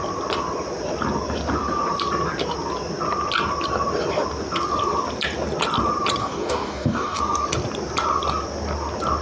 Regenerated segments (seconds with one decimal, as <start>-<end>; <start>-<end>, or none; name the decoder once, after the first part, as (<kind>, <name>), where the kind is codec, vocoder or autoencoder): 6.2-7.2 (codec, DAC)